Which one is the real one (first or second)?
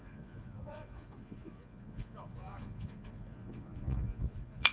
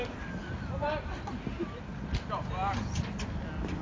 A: second